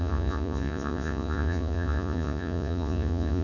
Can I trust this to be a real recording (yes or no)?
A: no